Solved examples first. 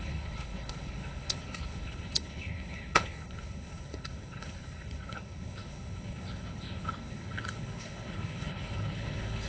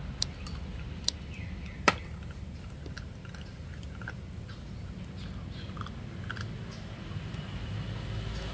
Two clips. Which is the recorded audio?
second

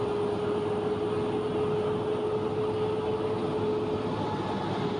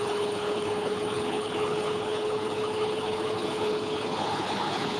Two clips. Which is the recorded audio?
first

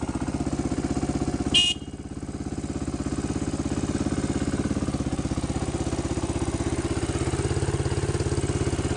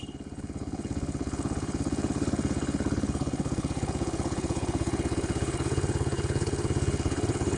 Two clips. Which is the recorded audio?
first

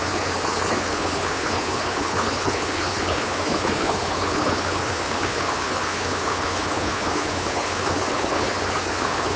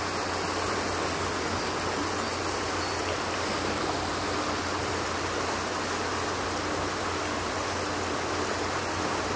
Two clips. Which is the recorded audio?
second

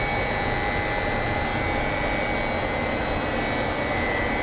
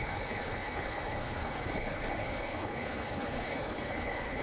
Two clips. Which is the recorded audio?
first